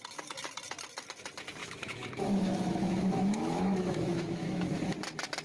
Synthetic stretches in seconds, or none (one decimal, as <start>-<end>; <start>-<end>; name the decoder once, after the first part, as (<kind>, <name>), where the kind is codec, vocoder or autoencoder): 1.6-4.8 (autoencoder, DAC-VAE)